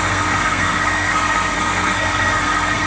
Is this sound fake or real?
fake